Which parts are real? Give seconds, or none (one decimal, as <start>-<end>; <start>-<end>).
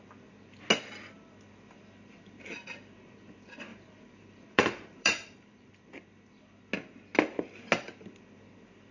0.0-3.7; 5.7-8.9